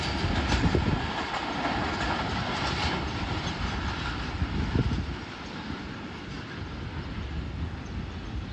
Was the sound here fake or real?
real